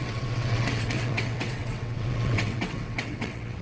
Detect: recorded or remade remade